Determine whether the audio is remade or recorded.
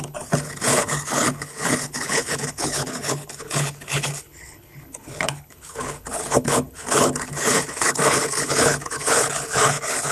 remade